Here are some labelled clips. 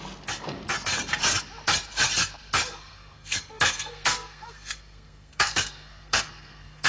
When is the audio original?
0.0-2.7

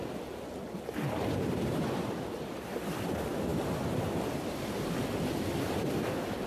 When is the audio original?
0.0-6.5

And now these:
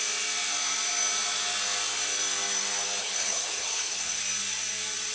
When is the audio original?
0.0-3.0; 4.2-5.1

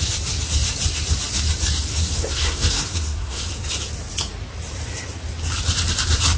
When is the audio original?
0.0-1.9; 3.5-6.4

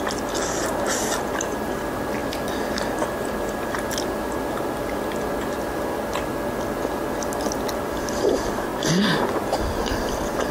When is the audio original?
0.0-2.2; 4.3-10.5